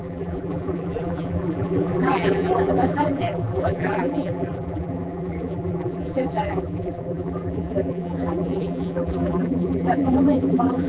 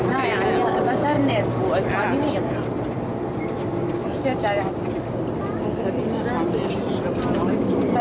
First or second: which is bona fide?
second